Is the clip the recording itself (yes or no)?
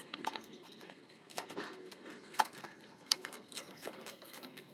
no